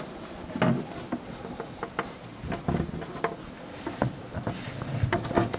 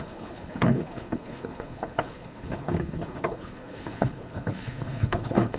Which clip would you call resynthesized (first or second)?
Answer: second